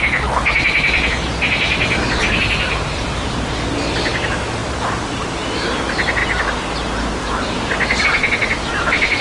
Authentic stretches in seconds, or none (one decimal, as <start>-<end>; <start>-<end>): 0.0-9.2